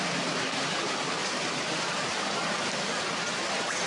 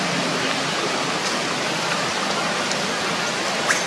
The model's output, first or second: first